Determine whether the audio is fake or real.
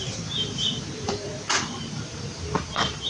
fake